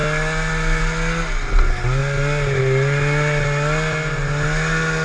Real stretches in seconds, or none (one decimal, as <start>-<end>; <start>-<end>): 0.0-5.0